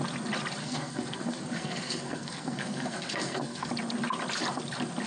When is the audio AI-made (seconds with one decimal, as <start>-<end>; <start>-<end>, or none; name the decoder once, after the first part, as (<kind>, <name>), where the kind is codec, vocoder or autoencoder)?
0.6-3.7 (codec, SNAC)